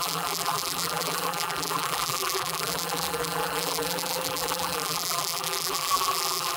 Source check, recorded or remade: remade